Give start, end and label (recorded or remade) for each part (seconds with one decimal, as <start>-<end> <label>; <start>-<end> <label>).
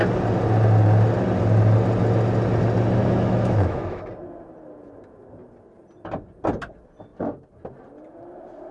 0.0-3.0 recorded; 3.0-4.0 remade; 4.0-8.7 recorded